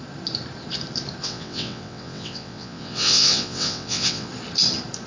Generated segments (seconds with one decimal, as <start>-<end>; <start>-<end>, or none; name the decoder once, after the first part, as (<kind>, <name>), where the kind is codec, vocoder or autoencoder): 1.2-4.3 (vocoder, WaveNeXt)